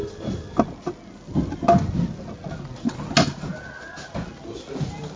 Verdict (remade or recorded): recorded